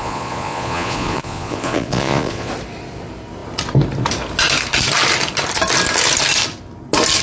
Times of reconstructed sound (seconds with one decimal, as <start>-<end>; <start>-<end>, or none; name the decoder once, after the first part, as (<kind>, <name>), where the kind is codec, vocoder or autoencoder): 0.0-2.5 (vocoder, Vocos)